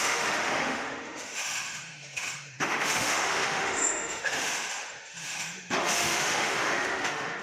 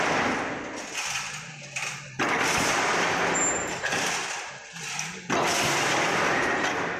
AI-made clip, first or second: first